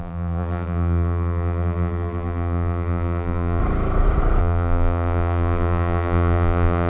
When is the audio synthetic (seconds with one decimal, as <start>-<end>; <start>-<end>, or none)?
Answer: 0.0-3.6; 4.4-6.9